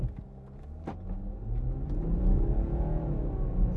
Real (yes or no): yes